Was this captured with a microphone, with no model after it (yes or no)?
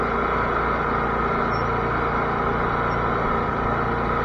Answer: yes